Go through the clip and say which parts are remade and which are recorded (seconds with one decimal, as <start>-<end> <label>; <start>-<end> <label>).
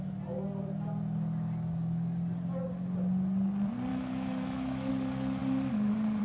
0.0-3.9 recorded; 3.9-4.9 remade; 4.9-6.2 recorded